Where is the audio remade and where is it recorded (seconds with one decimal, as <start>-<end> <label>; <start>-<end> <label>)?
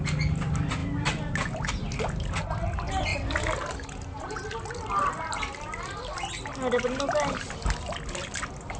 0.0-8.8 recorded